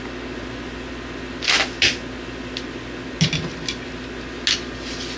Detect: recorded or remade recorded